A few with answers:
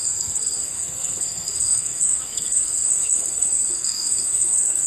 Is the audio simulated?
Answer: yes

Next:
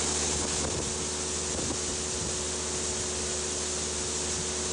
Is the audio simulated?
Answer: no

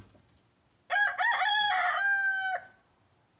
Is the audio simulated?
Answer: no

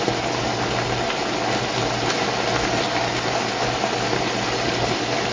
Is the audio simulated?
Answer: no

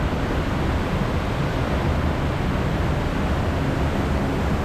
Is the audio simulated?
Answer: no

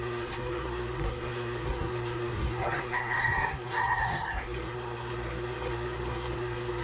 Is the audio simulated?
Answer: yes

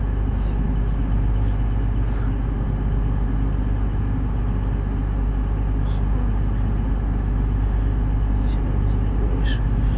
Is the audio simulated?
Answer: no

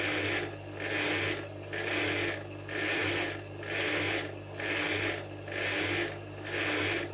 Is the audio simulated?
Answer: no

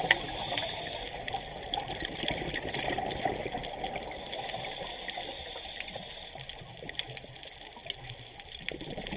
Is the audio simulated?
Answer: yes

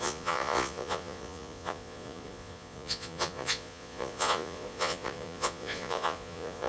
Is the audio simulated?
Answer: yes